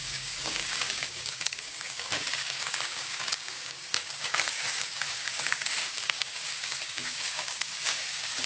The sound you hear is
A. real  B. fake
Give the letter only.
B